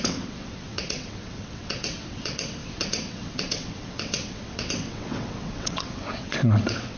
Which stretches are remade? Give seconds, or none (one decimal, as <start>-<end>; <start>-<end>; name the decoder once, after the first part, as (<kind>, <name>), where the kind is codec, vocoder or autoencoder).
0.0-7.0 (vocoder, WaveNeXt)